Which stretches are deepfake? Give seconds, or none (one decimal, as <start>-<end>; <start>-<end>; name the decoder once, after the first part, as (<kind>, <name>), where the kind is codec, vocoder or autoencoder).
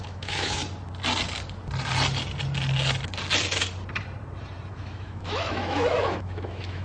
0.0-0.6 (autoencoder, DAC-VAE); 4.7-6.8